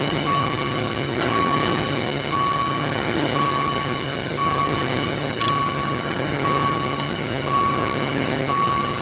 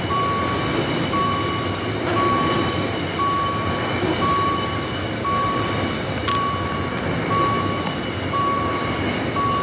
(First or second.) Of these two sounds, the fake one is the first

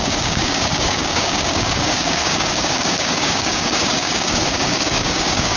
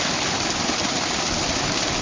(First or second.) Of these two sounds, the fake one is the first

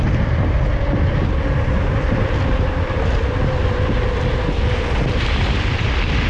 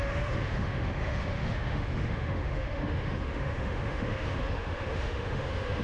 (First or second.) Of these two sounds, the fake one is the second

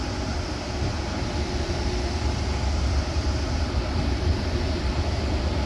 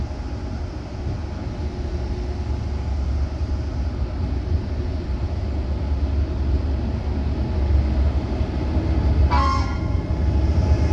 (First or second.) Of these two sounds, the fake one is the first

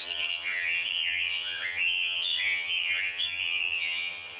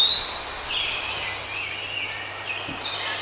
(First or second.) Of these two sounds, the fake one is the first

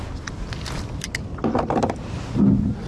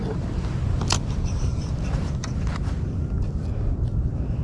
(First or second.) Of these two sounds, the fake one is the second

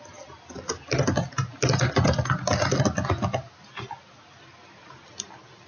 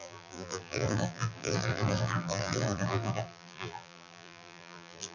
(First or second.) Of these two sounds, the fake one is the second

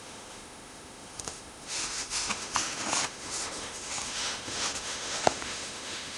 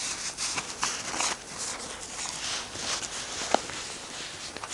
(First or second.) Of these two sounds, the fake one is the first